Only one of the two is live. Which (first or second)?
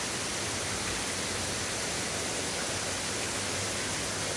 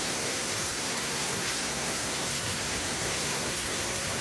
first